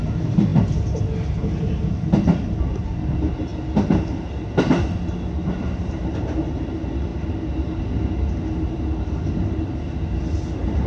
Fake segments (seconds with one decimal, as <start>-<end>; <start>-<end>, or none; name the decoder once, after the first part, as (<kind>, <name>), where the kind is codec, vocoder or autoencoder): none